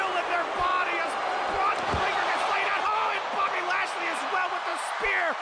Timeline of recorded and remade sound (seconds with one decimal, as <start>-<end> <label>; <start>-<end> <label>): 0.0-5.4 recorded